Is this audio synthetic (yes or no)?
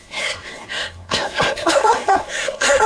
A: yes